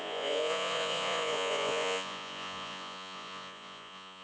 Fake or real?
fake